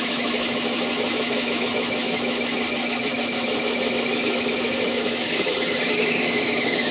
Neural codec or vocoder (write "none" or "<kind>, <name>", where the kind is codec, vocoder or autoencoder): autoencoder, DAC-VAE